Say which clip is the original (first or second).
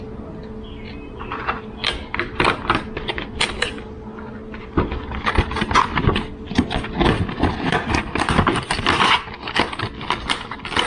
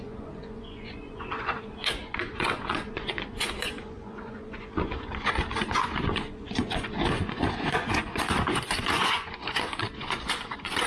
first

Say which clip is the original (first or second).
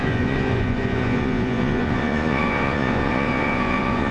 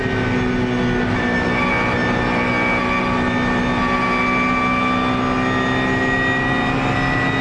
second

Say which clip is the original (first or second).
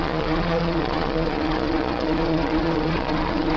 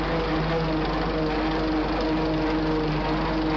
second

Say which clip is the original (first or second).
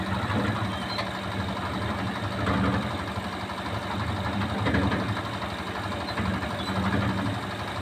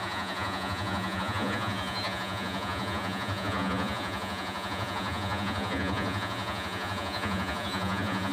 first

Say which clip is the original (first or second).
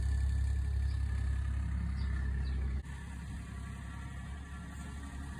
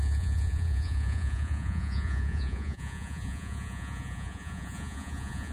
first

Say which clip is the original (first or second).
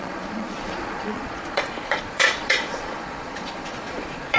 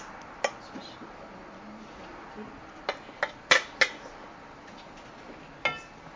second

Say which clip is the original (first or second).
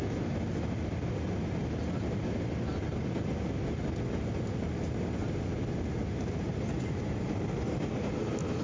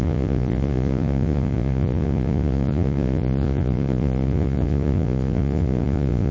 first